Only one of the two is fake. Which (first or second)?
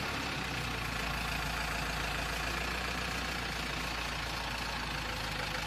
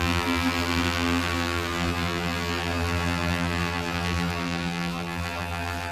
second